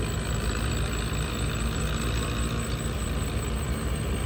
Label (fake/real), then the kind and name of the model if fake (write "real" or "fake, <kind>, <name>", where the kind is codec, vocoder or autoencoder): real